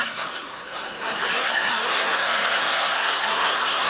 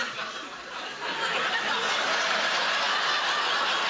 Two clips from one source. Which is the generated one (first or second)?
first